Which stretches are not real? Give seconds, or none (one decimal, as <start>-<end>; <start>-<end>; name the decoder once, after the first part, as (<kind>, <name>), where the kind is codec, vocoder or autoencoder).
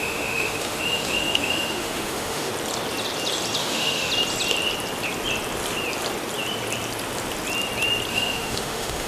0.0-2.5 (autoencoder, DAC-VAE); 3.6-4.1; 8.1-9.1